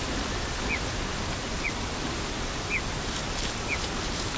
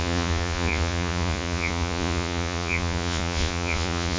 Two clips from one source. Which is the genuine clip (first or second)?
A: first